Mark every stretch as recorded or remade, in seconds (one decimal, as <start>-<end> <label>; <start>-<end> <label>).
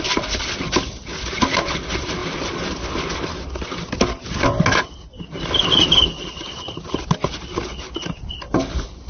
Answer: 0.0-9.1 recorded